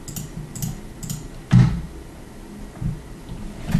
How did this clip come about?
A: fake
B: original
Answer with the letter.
B